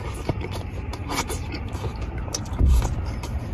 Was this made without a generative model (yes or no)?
no